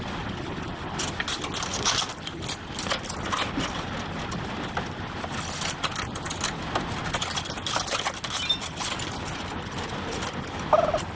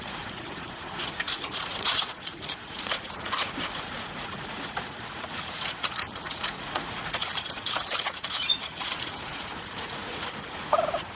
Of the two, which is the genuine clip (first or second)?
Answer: first